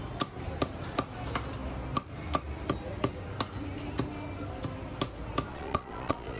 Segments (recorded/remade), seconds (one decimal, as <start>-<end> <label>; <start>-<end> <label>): 0.0-5.5 recorded; 5.5-6.4 remade